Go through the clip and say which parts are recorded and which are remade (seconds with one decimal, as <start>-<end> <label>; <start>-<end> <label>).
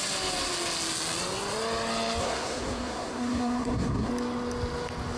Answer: 0.0-2.2 recorded; 2.2-4.1 remade; 4.1-5.2 recorded